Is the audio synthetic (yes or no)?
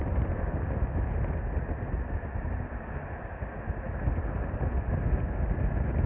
no